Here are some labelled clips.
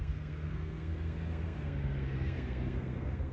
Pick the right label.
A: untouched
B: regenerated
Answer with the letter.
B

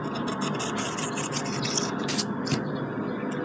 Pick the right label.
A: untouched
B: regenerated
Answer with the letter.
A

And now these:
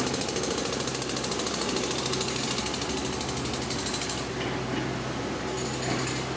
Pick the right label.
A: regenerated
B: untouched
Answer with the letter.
B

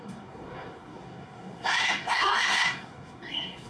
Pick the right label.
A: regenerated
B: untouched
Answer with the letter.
A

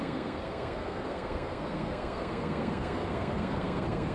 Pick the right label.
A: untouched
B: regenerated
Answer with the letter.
B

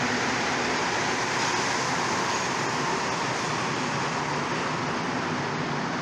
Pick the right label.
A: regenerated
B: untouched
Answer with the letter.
B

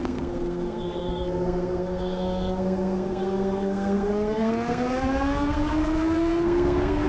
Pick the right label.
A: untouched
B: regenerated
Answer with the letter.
B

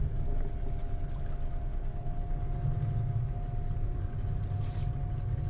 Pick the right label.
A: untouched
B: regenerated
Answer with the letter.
A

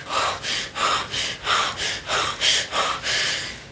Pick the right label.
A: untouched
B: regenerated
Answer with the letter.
A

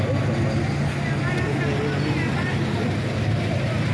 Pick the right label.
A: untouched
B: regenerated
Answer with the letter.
A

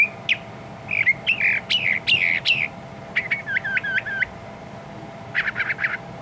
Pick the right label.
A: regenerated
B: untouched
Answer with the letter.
B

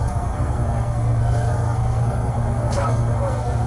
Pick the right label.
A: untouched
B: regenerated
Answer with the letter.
B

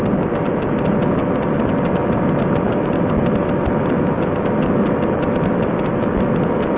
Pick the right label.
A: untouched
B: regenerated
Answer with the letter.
A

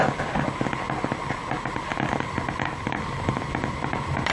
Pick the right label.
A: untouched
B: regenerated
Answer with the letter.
A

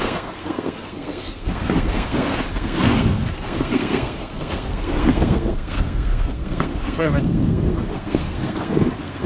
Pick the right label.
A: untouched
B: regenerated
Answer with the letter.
B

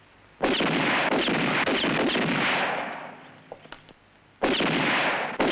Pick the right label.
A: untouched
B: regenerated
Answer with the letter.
A